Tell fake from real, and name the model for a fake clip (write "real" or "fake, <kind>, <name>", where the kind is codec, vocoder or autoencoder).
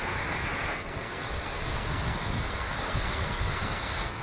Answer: fake, codec, SNAC